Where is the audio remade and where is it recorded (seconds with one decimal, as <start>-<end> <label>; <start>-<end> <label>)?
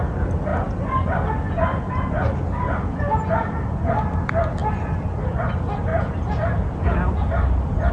0.0-5.9 recorded; 5.9-7.9 remade